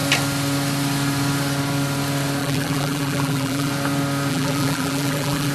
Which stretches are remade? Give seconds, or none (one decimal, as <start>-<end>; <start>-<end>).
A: 2.4-3.7; 4.3-5.5